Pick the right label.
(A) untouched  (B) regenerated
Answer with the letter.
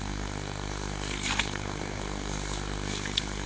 B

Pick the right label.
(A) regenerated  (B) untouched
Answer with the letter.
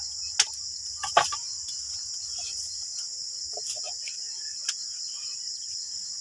B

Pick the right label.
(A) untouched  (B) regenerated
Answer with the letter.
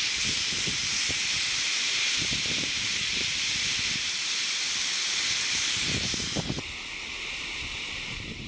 B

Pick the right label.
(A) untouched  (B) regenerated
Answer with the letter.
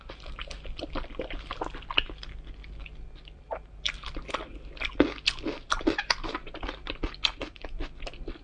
A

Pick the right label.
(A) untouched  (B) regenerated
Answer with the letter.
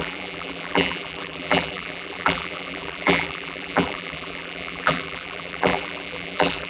B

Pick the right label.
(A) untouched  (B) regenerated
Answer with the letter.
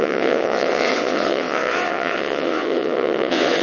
B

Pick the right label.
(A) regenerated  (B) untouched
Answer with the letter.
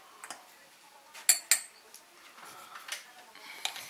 B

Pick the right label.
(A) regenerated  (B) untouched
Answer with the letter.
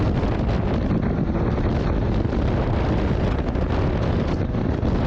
B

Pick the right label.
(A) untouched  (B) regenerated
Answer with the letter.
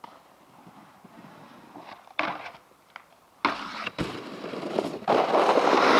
A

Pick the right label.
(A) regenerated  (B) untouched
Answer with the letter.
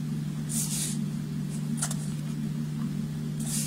B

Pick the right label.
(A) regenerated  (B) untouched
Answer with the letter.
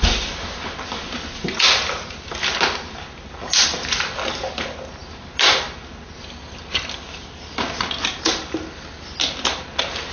B